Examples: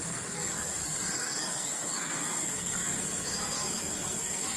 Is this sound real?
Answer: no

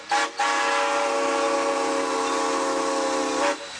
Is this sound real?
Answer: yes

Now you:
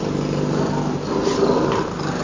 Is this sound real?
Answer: yes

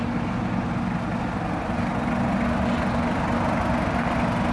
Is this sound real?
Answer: yes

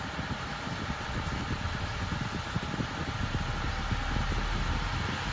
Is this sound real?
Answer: yes